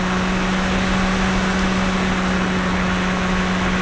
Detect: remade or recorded recorded